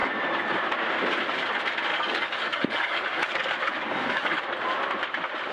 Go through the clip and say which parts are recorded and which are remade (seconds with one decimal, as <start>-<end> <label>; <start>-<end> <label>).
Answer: 0.0-1.9 recorded; 1.9-4.4 remade; 4.4-5.5 recorded